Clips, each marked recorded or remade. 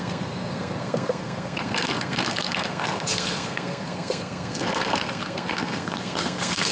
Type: remade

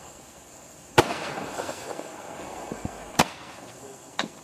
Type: remade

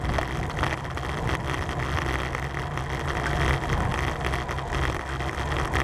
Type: recorded